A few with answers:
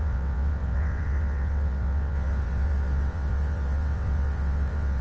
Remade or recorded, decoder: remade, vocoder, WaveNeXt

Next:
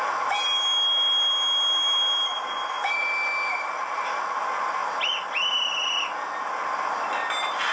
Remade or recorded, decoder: recorded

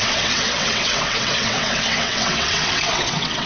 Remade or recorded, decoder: remade, vocoder, WaveNeXt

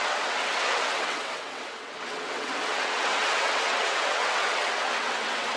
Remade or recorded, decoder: remade, vocoder, WaveNeXt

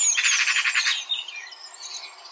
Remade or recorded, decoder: recorded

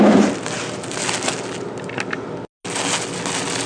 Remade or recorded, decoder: recorded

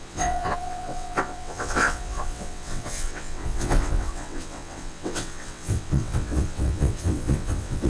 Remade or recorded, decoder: remade, vocoder, WaveNeXt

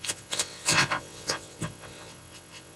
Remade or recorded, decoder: remade, vocoder, WaveNeXt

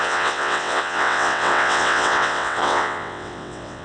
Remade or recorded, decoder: remade, vocoder, WaveNeXt